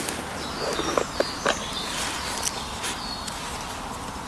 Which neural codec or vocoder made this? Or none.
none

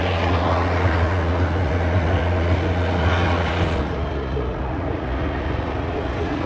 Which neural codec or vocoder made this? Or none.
vocoder, Vocos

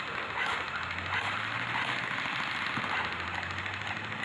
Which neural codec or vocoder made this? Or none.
none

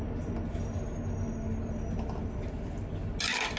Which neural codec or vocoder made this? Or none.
none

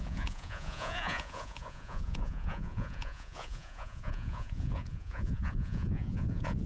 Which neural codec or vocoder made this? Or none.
vocoder, Vocos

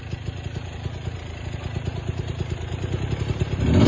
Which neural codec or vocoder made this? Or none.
none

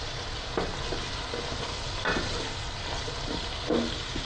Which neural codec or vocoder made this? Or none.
none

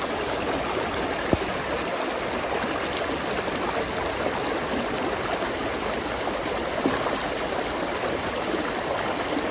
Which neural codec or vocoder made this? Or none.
none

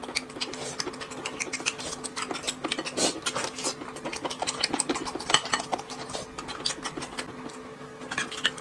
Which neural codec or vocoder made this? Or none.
none